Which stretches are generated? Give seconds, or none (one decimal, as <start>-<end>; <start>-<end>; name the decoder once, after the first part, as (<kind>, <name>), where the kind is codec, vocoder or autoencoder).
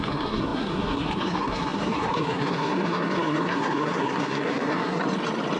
0.0-5.0 (codec, SNAC)